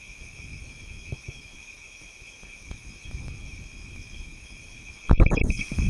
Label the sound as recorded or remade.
remade